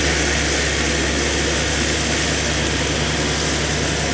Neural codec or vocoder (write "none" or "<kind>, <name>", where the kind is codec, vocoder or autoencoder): none